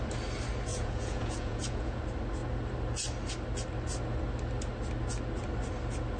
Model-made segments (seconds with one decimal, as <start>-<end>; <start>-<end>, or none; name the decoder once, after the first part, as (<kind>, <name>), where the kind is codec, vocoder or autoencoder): 0.7-2.0 (vocoder, Vocos)